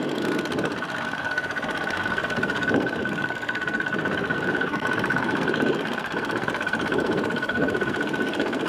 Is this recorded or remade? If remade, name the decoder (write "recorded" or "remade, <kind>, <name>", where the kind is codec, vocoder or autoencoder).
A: remade, codec, SNAC